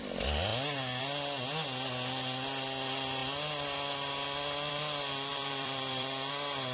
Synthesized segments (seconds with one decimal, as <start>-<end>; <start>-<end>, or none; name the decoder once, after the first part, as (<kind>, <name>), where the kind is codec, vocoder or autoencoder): 5.3-6.3 (vocoder, BigVGAN v2)